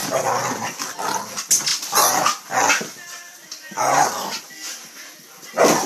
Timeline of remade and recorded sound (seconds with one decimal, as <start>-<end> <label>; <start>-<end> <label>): 0.0-5.9 recorded